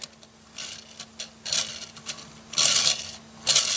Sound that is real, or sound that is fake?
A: real